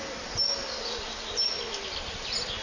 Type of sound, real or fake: real